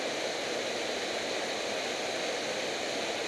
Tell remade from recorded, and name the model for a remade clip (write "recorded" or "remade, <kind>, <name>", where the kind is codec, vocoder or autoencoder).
recorded